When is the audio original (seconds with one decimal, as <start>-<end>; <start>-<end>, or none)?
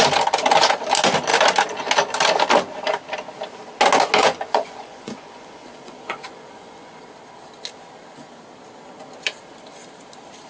0.0-4.2; 7.0-10.5